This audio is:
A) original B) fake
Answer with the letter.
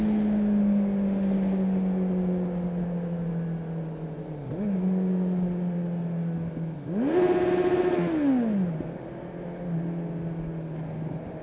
A